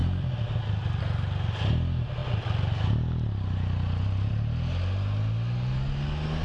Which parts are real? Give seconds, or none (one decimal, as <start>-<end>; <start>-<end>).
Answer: 0.0-6.4